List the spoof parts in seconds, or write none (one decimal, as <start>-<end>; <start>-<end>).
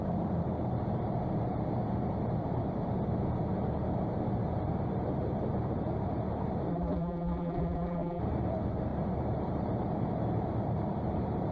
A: 6.7-8.2